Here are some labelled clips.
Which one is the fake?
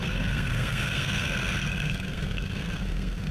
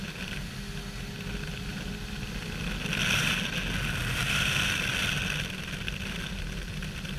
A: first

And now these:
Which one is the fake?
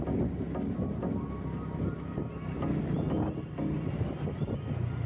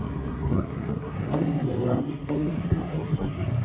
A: second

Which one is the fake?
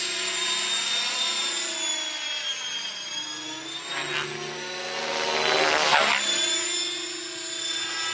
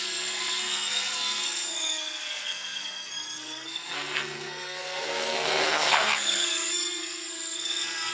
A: second